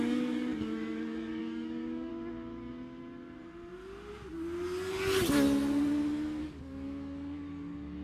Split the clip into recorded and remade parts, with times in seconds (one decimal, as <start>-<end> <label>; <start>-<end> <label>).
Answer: 0.0-2.1 remade; 2.1-6.4 recorded; 6.4-8.0 remade